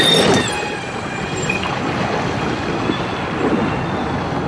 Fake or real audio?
real